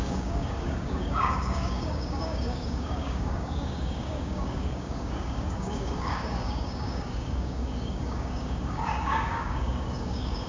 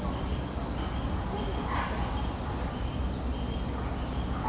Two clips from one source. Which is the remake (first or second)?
first